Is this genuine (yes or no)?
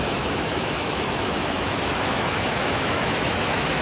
no